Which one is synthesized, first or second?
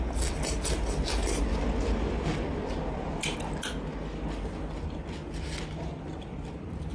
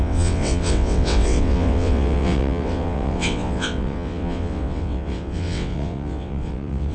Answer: second